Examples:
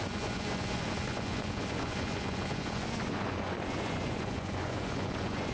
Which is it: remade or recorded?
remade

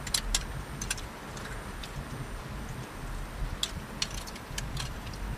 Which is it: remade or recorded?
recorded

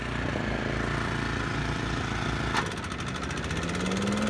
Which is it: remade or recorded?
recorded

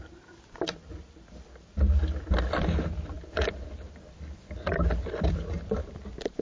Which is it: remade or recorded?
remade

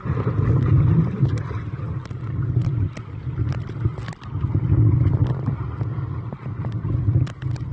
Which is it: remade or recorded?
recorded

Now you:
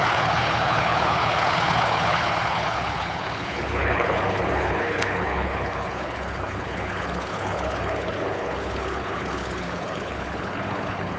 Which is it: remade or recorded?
remade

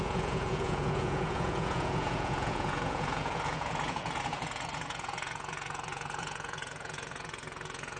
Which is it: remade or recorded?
remade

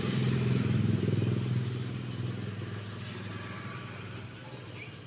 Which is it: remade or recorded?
recorded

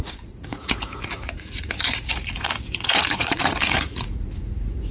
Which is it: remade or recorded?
remade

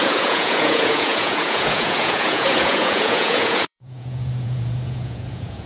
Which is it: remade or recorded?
remade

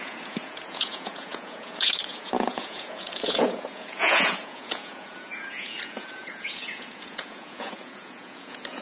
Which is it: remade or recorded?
remade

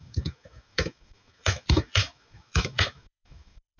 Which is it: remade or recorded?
remade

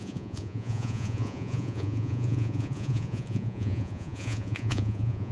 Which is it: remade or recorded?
remade